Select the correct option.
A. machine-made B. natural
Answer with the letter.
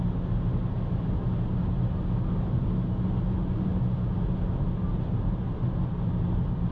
B